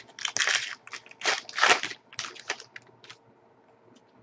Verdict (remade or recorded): recorded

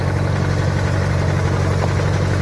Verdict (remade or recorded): recorded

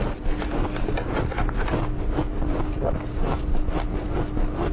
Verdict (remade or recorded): recorded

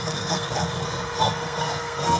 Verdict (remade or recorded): remade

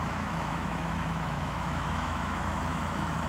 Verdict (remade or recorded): remade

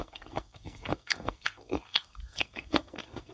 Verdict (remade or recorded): remade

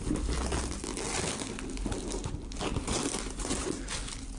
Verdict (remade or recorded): recorded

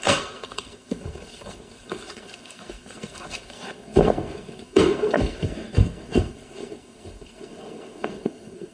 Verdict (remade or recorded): remade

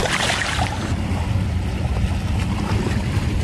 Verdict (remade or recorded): recorded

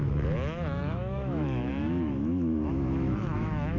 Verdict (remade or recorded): remade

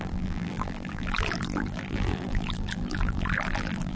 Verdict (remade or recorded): remade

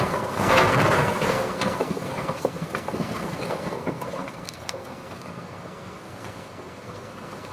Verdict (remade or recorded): remade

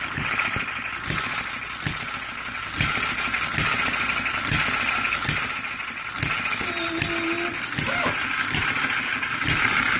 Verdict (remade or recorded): recorded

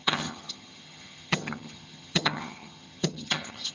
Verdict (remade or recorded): remade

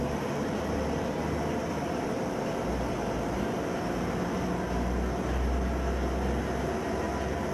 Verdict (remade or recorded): recorded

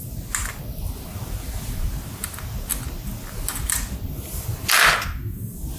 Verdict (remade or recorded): recorded